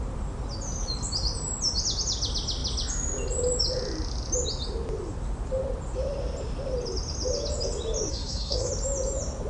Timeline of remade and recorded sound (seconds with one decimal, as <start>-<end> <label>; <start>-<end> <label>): 0.0-8.1 recorded; 8.1-8.7 remade; 8.7-9.5 recorded